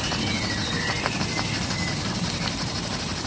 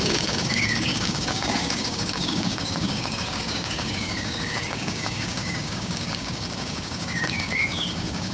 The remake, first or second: second